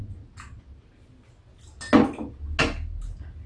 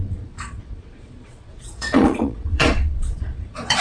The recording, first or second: first